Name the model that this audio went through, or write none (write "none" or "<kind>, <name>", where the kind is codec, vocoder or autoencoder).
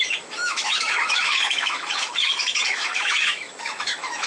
autoencoder, DAC-VAE